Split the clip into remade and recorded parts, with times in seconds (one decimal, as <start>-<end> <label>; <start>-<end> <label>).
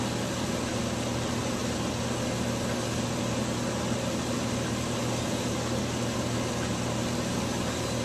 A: 0.0-8.0 recorded